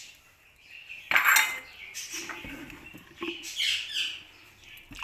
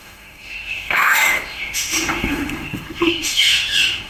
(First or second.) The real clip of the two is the first